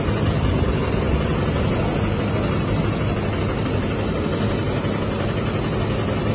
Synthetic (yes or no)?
no